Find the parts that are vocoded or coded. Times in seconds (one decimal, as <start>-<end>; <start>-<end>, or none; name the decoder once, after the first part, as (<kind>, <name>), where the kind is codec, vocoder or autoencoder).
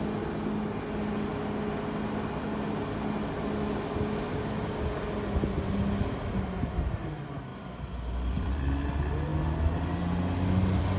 7.5-8.9 (vocoder, BigVGAN v2)